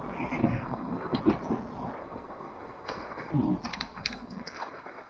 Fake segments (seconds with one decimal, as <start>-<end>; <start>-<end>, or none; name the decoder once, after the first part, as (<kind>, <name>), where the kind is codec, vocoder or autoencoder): 0.4-1.2 (codec, SNAC); 2.0-3.3; 3.7-5.1